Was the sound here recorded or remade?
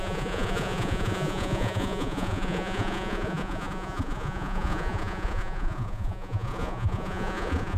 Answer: remade